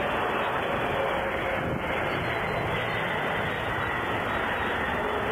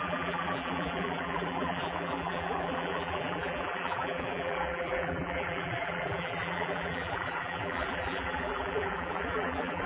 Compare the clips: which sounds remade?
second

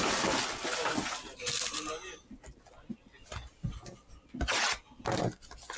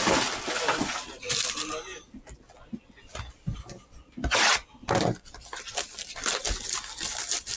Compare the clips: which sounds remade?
second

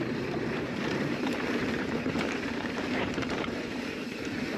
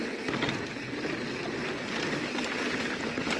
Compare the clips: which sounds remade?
first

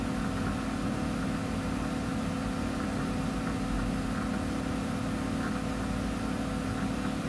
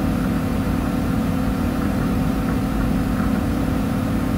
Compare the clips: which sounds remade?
second